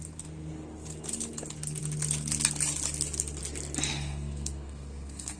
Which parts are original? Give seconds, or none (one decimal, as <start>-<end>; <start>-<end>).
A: 0.0-3.9